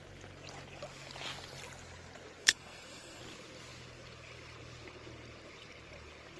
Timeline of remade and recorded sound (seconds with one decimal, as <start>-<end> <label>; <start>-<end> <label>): 0.0-2.4 recorded; 2.4-3.2 remade; 3.2-6.4 recorded